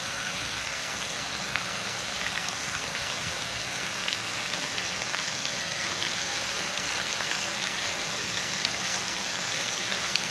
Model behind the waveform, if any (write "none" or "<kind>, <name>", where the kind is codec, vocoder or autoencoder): codec, SNAC